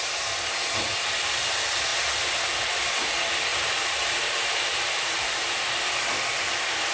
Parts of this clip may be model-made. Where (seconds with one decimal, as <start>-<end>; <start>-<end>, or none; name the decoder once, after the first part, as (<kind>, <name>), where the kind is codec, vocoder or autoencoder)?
3.5-5.8 (vocoder, BigVGAN v2)